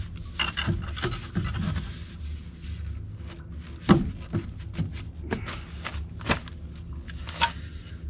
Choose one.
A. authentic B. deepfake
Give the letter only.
A